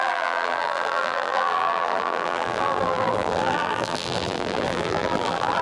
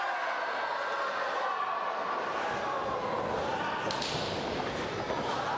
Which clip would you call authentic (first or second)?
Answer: second